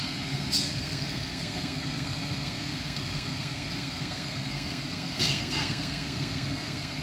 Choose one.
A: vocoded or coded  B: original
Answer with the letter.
A